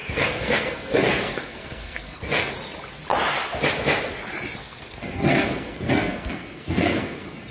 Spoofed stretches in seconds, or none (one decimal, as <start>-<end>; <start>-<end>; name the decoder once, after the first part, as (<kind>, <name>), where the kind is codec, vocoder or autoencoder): 0.0-2.5 (codec, SNAC); 4.6-7.5